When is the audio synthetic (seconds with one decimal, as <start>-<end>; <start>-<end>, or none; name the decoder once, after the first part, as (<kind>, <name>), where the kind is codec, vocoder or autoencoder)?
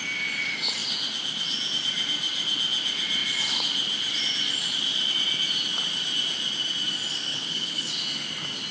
7.3-7.9 (codec, HILCodec)